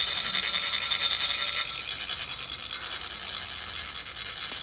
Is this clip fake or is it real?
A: real